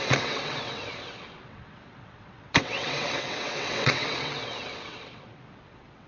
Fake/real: fake